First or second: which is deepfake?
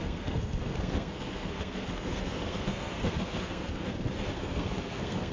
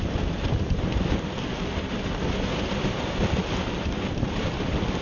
first